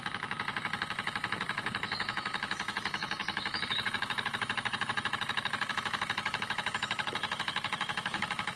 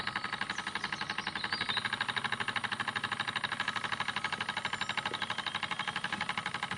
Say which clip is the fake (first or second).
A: first